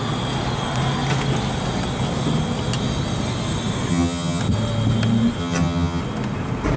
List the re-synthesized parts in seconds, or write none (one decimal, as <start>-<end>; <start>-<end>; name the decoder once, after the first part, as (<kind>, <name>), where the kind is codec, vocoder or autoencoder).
3.9-4.4 (vocoder, HiFi-GAN); 5.4-6.0